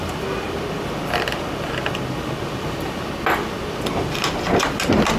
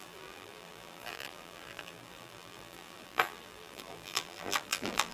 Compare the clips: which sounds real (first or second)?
first